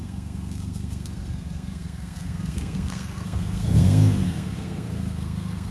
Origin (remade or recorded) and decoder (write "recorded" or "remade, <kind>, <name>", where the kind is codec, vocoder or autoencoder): remade, codec, SNAC